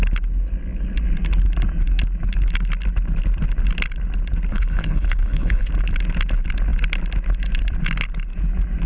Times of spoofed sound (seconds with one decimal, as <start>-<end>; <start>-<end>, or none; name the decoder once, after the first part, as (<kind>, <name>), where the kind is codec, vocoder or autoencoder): 4.5-5.7 (codec, HILCodec)